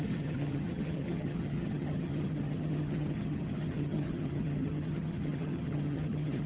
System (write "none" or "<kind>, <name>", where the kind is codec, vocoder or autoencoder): vocoder, HiFi-GAN